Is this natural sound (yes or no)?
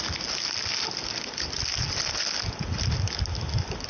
yes